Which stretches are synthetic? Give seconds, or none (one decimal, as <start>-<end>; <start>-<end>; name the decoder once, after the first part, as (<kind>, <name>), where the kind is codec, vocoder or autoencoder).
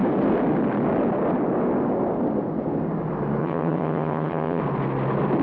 3.4-4.6 (vocoder, HiFi-GAN)